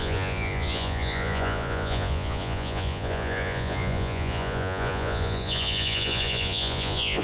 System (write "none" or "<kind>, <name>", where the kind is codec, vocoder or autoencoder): vocoder, Vocos